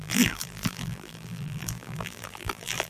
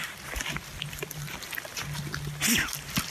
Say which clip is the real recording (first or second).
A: second